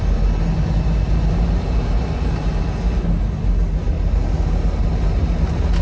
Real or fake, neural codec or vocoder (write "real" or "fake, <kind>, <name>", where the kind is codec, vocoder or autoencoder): real